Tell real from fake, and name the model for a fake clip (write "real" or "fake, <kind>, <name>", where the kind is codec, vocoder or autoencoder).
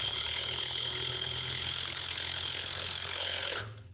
fake, codec, HILCodec